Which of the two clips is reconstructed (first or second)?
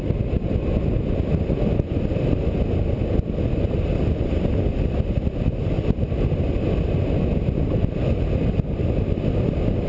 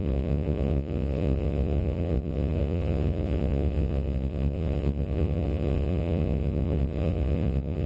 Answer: second